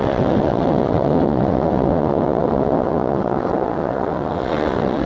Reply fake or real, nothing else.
fake